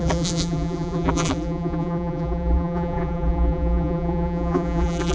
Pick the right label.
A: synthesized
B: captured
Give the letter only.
A